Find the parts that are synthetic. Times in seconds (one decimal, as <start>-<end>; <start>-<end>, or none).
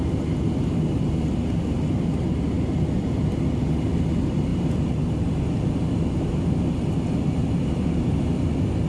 none